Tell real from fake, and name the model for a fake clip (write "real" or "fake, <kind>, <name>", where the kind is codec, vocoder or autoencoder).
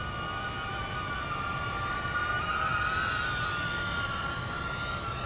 real